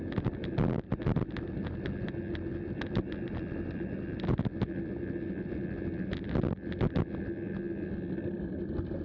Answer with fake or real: real